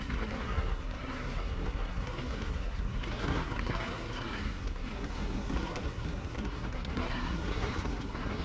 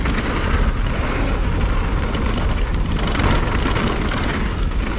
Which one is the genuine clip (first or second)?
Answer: second